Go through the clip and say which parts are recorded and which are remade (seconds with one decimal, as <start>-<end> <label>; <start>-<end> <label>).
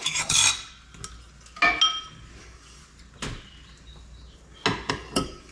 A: 0.0-0.4 remade; 0.4-2.4 recorded; 2.4-2.8 remade; 2.8-4.9 recorded; 4.9-5.5 remade